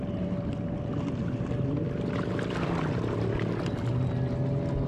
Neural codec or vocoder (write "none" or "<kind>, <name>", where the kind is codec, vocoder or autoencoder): none